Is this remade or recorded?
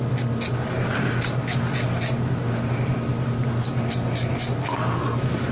recorded